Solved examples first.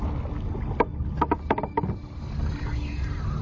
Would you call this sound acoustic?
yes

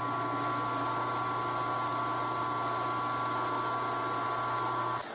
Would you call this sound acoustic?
yes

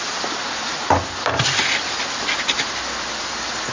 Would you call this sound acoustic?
yes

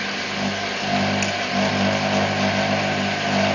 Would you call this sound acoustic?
yes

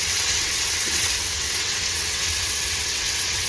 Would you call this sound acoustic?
no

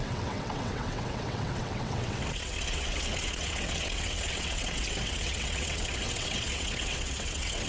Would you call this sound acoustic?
no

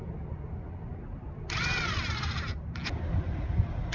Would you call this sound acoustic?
yes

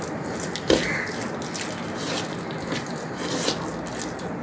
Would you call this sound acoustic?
yes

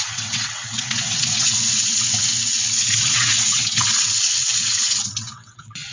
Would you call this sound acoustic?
no